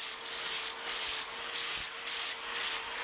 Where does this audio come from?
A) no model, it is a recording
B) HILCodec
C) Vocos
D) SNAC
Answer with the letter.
A